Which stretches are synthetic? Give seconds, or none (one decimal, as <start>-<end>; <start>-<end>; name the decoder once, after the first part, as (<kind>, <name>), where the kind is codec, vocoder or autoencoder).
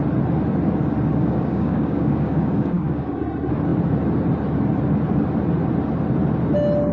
1.1-3.2 (codec, DAC)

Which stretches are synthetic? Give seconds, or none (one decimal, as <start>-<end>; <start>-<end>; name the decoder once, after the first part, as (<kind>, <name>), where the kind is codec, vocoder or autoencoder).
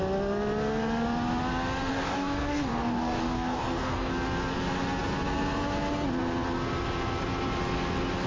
1.9-4.1 (codec, DAC)